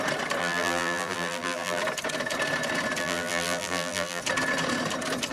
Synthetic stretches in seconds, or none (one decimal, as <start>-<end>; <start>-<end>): 0.4-1.8; 3.0-4.2